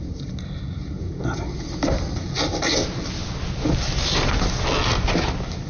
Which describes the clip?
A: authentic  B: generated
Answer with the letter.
A